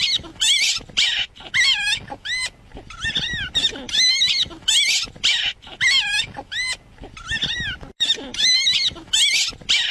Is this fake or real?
real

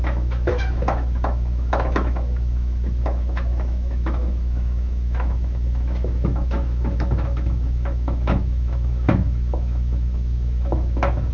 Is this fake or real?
fake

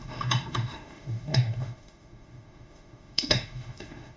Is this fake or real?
fake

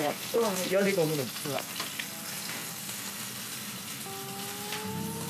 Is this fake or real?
real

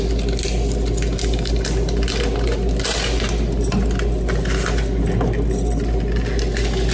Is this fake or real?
real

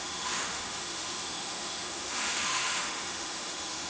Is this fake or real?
fake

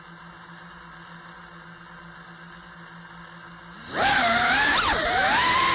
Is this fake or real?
real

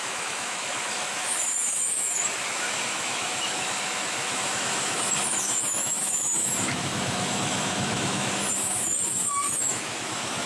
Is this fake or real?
fake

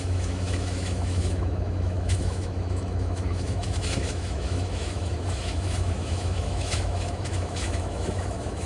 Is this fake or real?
fake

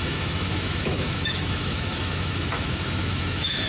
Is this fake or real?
fake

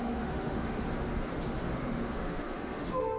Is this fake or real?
fake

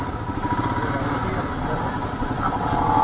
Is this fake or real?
real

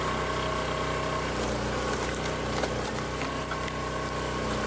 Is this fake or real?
real